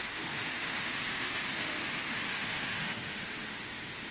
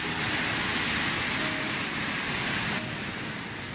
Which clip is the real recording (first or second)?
second